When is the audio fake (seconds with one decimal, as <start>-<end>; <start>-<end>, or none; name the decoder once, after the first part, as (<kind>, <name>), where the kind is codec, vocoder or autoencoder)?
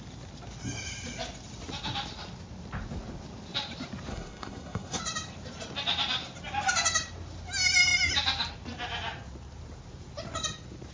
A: 4.1-5.0 (codec, SNAC)